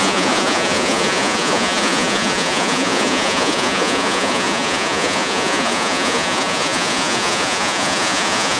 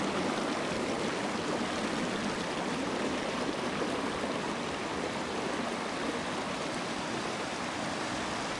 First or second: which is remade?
first